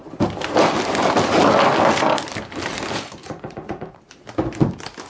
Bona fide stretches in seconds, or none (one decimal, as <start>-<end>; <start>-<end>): 0.0-3.2; 4.0-5.1